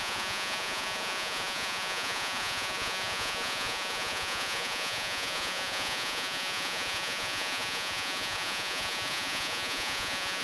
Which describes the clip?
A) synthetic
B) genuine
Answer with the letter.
A